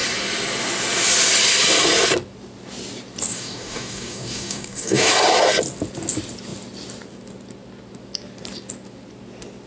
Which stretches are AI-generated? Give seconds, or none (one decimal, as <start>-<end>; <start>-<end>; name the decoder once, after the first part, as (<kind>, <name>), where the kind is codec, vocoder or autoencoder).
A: 3.3-5.1 (codec, DAC)